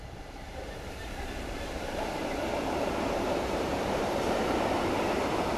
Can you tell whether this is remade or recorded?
remade